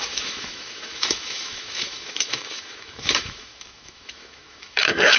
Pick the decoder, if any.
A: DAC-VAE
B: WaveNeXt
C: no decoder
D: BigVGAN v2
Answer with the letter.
A